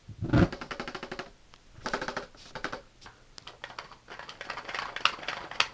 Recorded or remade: recorded